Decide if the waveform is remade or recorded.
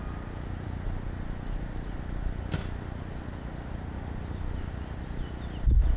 recorded